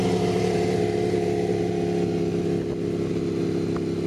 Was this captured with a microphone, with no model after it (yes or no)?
yes